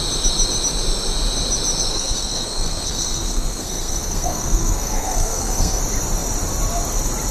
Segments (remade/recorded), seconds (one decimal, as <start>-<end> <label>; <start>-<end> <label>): 0.0-1.9 recorded; 1.9-5.8 remade; 5.8-7.3 recorded